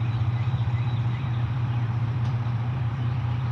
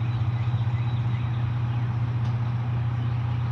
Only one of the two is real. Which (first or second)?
second